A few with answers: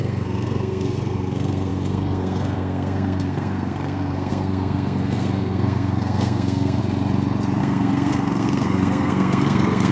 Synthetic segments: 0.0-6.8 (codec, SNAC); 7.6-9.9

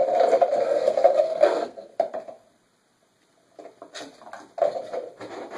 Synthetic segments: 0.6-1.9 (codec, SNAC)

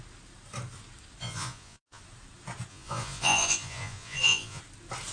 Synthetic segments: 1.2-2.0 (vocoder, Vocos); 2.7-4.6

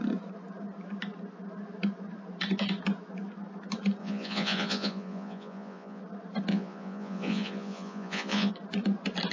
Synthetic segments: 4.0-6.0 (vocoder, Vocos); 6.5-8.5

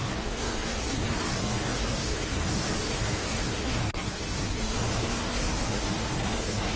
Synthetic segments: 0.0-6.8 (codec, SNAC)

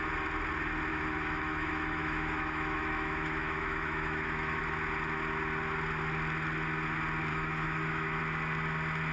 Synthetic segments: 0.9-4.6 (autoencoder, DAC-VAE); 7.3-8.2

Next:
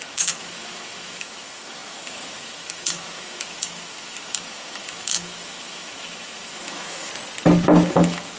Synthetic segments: 0.0-7.1 (autoencoder, DAC-VAE); 7.9-8.4